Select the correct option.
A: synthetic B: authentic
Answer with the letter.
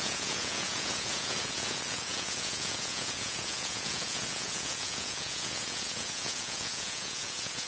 A